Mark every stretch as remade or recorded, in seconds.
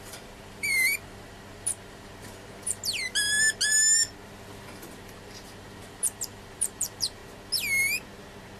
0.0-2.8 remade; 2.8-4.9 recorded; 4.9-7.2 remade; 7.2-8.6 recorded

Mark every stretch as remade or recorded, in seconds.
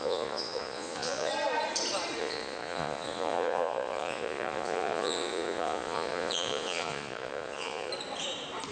0.0-1.3 remade; 1.3-2.2 recorded; 2.2-7.9 remade; 7.9-8.7 recorded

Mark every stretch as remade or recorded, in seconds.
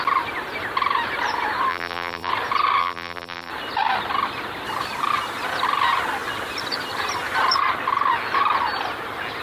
0.0-1.7 recorded; 1.7-2.3 remade; 2.3-2.8 recorded; 2.8-3.5 remade; 3.5-9.4 recorded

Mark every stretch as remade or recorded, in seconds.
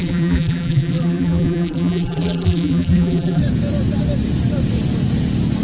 0.0-3.4 remade; 3.4-5.6 recorded